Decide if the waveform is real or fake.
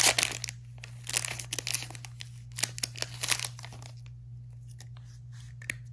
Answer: real